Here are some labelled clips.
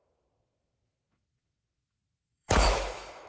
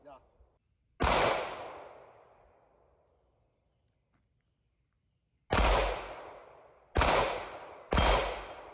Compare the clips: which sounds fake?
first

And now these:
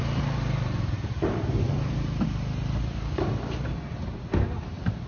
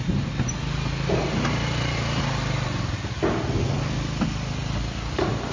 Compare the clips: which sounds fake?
first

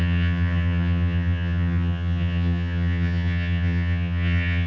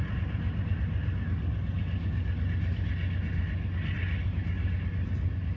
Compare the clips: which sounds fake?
first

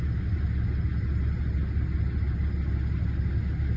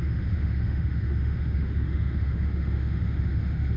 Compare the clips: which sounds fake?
second